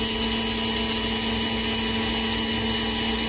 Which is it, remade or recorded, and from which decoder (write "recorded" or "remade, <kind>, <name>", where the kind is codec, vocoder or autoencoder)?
recorded